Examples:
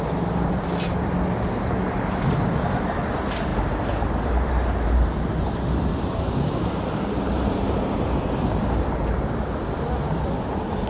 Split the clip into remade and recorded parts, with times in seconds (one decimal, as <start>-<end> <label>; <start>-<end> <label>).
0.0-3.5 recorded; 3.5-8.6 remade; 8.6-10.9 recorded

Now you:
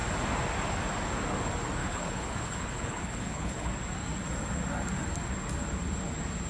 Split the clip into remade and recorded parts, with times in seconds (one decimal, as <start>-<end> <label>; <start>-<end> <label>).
0.0-1.8 recorded; 1.8-3.7 remade; 3.7-6.5 recorded

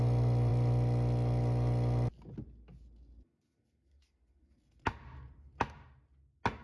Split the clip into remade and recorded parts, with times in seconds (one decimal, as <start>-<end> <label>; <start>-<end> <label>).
0.0-6.6 recorded

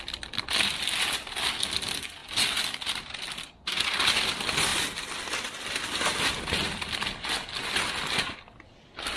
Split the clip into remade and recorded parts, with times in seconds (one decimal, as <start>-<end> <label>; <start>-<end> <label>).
0.0-9.2 recorded

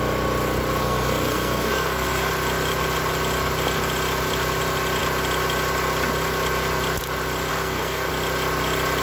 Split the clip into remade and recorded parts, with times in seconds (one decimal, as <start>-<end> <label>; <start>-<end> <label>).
0.0-0.8 recorded; 0.8-2.3 remade; 2.3-7.5 recorded; 7.5-8.1 remade; 8.1-9.0 recorded